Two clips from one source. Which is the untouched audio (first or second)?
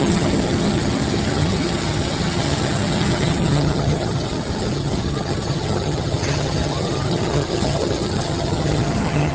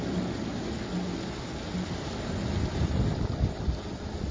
second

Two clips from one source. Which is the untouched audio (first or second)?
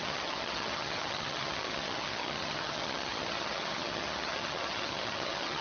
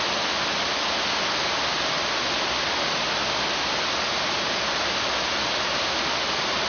second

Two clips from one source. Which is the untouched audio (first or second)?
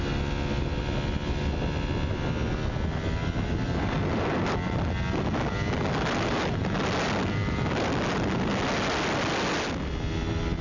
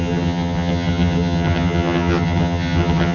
first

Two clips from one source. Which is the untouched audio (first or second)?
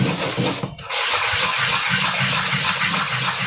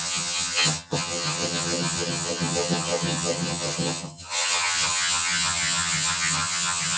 first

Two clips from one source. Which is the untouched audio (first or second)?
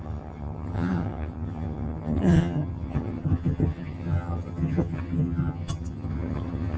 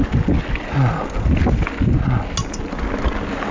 second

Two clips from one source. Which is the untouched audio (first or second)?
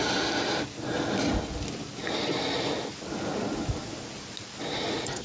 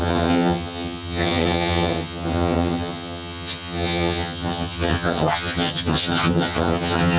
first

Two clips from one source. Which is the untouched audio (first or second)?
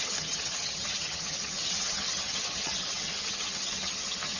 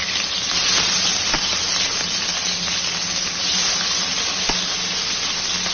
second